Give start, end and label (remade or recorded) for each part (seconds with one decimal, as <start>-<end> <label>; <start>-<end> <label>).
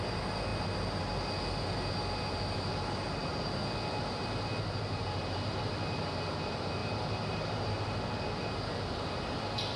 0.0-6.8 recorded; 6.8-7.7 remade; 7.7-9.8 recorded